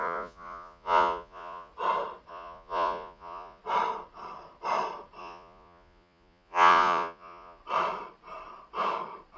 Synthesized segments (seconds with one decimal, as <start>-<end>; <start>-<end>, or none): 0.0-1.7; 2.3-3.6; 5.2-7.6